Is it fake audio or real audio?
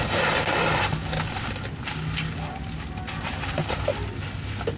real